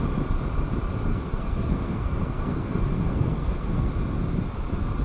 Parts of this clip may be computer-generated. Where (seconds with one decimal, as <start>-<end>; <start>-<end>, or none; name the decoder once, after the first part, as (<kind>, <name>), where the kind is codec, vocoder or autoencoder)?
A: 1.1-3.9 (codec, SNAC)